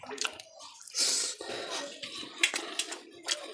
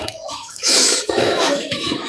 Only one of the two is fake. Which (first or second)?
second